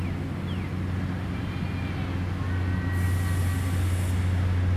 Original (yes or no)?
yes